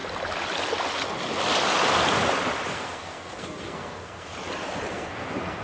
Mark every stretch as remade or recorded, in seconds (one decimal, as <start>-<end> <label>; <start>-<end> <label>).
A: 0.0-2.7 recorded; 2.7-4.3 remade; 4.3-4.9 recorded; 4.9-5.6 remade